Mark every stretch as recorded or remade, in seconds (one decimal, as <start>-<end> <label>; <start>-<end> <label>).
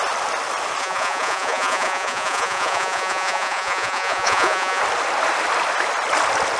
0.0-0.8 recorded; 0.8-4.8 remade; 4.8-6.6 recorded